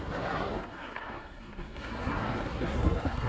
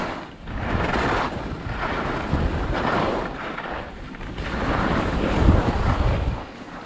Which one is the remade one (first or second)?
first